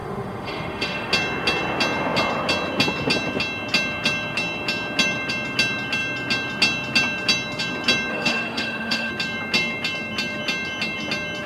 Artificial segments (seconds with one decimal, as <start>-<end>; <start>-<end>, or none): 0.0-1.1; 8.1-9.1